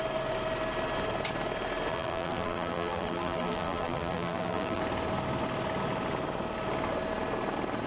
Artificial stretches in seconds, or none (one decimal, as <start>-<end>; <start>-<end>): 1.9-4.8